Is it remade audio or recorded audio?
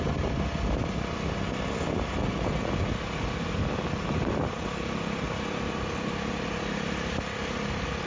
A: recorded